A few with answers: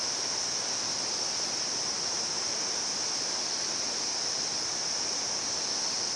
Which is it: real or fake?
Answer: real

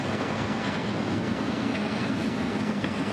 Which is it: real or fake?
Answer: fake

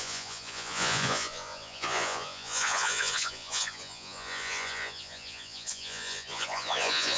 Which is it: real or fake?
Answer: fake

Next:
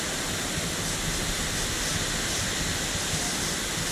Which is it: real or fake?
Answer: real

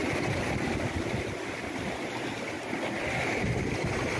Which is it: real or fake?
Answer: real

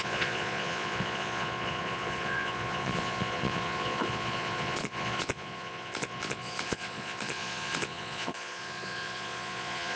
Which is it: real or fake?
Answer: fake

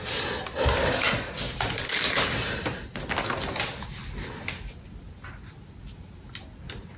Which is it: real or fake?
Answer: real